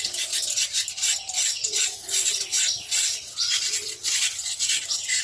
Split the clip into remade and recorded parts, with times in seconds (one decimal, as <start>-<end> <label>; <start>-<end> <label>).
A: 0.0-1.5 recorded; 1.5-4.6 remade; 4.6-5.2 recorded